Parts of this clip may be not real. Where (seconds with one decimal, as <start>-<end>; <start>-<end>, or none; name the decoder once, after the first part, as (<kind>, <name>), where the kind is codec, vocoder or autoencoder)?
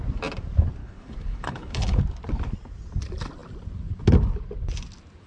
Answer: 0.8-2.0 (codec, HILCodec)